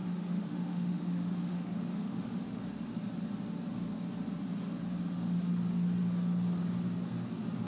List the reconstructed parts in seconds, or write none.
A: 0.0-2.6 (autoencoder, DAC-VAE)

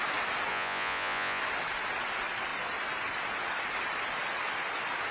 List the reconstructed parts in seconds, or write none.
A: 0.5-1.4 (vocoder, Vocos)

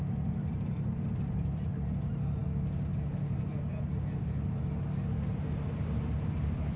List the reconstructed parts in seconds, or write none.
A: 0.0-2.4 (vocoder, BigVGAN v2); 3.5-6.8